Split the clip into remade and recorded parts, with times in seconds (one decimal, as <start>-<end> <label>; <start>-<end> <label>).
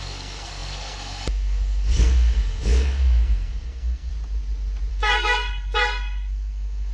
0.0-4.1 remade; 4.1-4.9 recorded; 4.9-6.9 remade